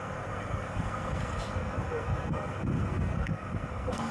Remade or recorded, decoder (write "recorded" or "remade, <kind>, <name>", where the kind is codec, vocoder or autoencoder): remade, codec, SNAC